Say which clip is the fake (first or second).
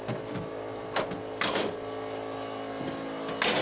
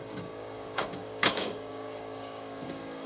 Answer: second